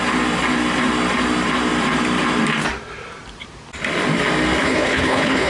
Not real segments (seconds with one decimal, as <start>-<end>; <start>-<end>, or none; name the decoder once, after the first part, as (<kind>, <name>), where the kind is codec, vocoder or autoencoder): 4.6-5.5 (codec, HILCodec)